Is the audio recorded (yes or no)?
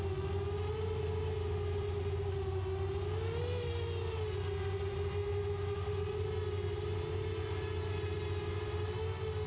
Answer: yes